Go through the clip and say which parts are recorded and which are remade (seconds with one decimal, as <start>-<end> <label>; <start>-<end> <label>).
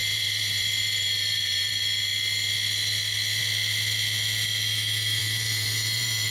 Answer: 0.0-1.7 remade; 1.7-5.2 recorded; 5.2-6.3 remade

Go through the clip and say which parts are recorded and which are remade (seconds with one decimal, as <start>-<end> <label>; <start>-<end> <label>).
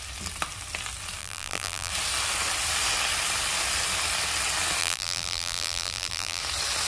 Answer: 0.0-1.2 recorded; 1.2-1.9 remade; 1.9-4.8 recorded; 4.8-6.4 remade; 6.4-6.9 recorded